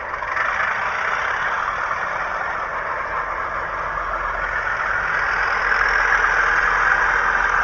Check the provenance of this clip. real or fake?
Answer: real